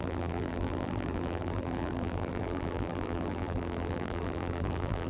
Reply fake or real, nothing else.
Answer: fake